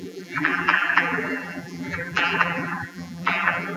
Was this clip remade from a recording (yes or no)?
yes